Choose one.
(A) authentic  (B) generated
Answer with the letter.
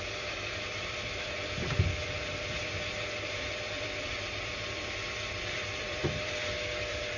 B